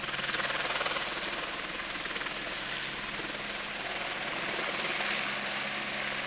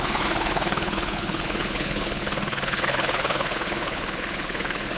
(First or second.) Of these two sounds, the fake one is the second